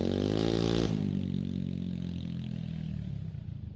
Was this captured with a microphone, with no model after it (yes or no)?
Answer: yes